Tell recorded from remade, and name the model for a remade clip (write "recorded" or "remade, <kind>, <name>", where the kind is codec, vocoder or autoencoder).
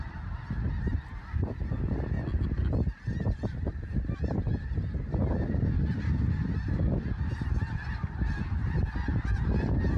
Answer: recorded